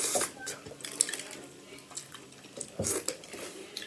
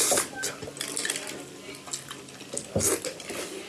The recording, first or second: second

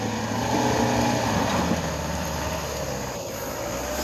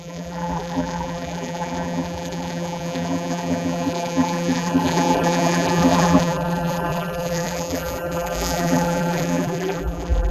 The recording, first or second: first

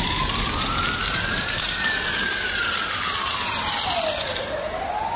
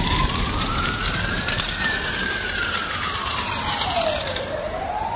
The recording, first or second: first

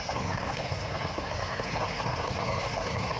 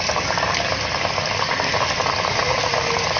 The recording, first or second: second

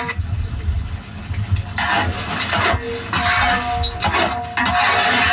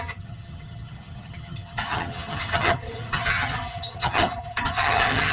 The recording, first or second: first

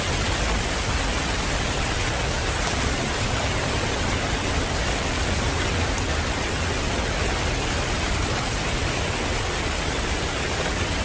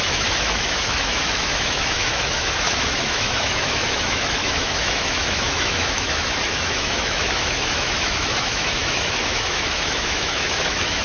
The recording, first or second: first